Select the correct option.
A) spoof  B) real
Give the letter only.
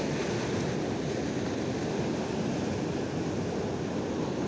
B